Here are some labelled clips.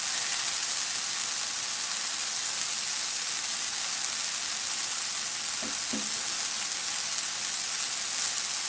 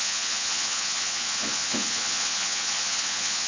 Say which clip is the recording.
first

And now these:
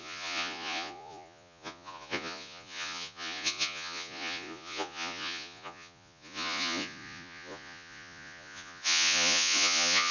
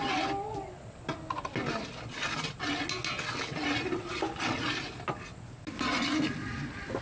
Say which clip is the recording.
second